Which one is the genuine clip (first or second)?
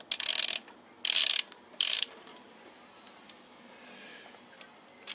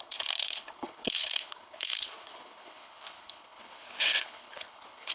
first